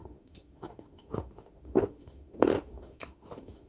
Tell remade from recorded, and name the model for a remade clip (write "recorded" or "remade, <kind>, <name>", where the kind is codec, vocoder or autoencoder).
remade, autoencoder, DAC-VAE